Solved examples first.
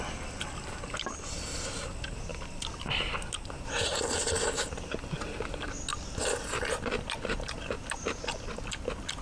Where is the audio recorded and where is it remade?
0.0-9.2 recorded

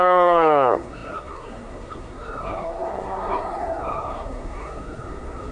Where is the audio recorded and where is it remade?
0.0-5.5 remade

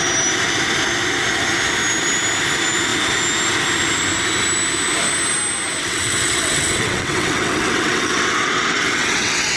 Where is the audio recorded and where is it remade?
0.0-5.8 recorded; 5.8-9.6 remade

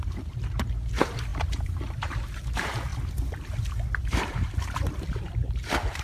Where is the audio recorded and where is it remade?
0.0-2.9 remade; 2.9-4.0 recorded; 4.0-6.0 remade

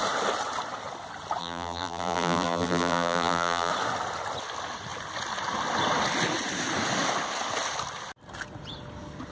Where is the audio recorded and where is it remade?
0.0-1.4 recorded; 1.4-3.7 remade; 3.7-9.3 recorded

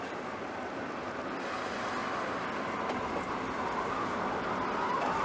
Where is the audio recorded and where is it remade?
0.0-5.2 recorded